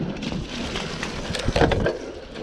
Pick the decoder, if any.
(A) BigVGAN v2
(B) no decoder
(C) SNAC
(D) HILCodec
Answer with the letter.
B